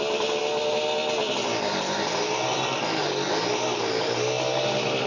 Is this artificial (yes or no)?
no